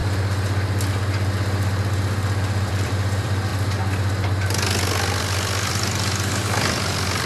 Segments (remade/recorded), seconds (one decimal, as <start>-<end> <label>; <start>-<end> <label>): 0.0-2.7 recorded; 2.7-3.5 remade; 3.5-5.2 recorded; 5.2-7.3 remade